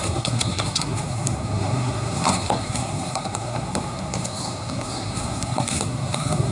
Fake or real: fake